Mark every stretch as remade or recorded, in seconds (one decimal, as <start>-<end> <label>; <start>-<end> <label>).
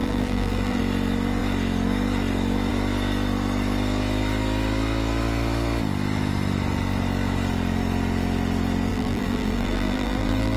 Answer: 0.0-0.8 remade; 0.8-8.9 recorded; 8.9-10.6 remade